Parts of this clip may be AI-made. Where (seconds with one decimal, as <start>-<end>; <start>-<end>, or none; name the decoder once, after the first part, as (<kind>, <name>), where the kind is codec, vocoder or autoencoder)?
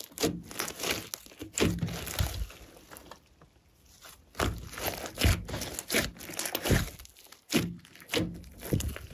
none